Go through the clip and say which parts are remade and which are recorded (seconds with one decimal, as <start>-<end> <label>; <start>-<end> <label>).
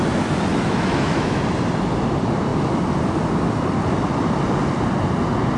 0.0-0.5 recorded; 0.5-1.4 remade; 1.4-5.6 recorded